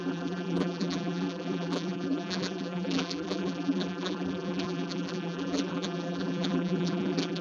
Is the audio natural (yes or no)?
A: no